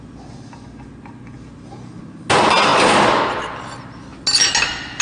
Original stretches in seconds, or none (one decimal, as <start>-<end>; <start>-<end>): 0.0-5.0